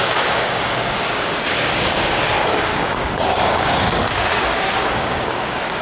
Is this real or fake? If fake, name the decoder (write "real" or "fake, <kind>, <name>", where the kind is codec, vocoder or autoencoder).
fake, codec, DAC